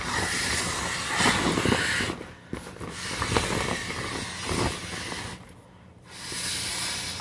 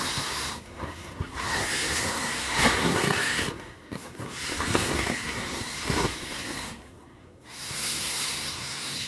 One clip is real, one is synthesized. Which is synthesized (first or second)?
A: second